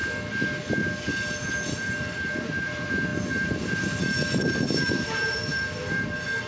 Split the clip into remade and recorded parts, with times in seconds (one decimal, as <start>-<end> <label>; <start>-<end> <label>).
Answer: 0.0-1.5 recorded; 1.5-6.5 remade